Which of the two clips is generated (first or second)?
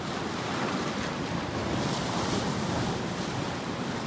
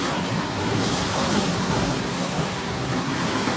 second